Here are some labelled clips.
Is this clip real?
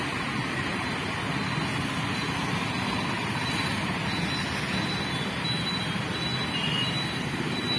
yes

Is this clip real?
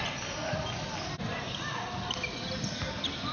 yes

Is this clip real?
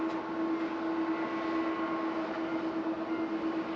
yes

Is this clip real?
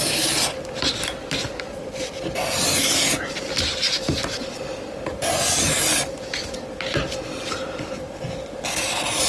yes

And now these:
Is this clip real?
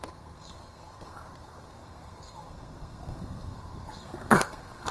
no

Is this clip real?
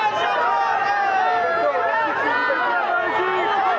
yes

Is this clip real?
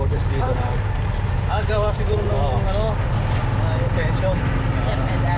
yes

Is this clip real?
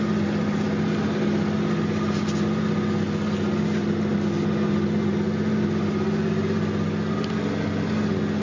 yes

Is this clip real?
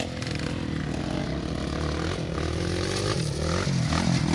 yes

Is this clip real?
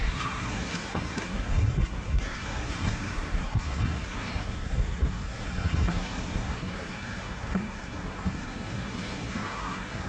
no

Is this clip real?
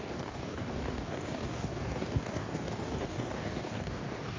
no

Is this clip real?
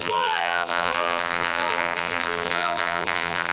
no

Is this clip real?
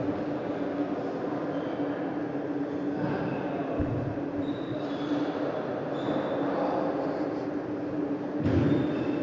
yes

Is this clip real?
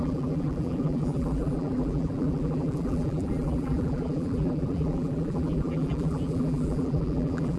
no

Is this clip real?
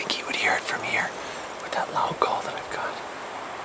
yes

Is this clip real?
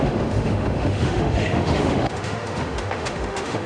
no